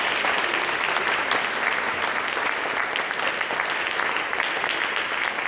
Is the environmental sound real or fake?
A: real